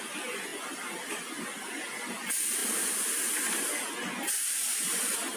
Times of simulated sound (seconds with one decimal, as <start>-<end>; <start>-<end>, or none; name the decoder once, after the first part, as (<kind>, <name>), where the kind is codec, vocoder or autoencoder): none